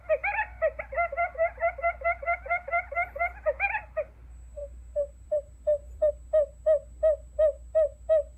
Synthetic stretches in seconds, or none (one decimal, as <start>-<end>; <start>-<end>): 4.6-6.1